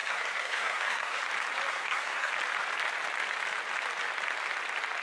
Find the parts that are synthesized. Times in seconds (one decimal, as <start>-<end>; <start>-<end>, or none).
0.0-1.2; 1.7-2.3